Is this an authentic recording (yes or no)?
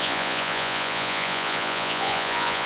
no